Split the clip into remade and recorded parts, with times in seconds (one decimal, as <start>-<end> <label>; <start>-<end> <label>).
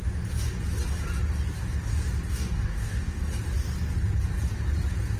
0.0-2.3 recorded; 2.3-3.2 remade; 3.2-5.2 recorded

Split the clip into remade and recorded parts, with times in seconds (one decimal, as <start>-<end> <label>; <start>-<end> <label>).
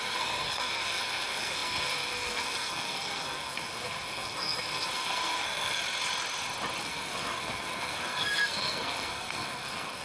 0.0-5.8 remade; 5.8-6.8 recorded; 6.8-10.0 remade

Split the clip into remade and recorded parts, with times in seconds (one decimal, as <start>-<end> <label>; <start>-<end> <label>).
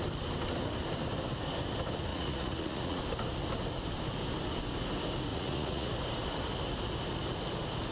0.0-2.1 recorded; 2.1-3.0 remade; 3.0-5.3 recorded; 5.3-5.9 remade; 5.9-7.9 recorded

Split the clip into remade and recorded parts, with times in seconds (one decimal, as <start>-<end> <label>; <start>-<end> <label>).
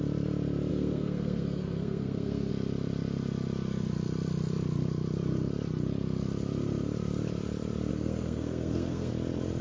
0.0-0.7 recorded; 0.7-2.5 remade; 2.5-7.9 recorded; 7.9-9.1 remade; 9.1-9.6 recorded